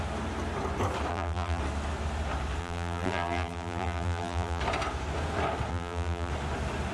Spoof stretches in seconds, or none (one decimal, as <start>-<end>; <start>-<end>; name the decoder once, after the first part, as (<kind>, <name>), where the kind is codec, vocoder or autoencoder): 1.1-1.6 (vocoder, BigVGAN v2); 2.6-4.6; 5.7-6.3